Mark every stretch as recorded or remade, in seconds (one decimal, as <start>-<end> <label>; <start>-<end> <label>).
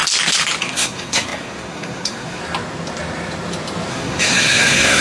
0.0-0.6 recorded; 0.6-2.4 remade; 2.4-3.9 recorded; 3.9-5.0 remade